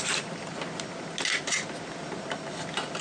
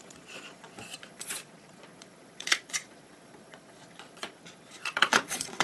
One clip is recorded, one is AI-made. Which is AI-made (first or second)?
second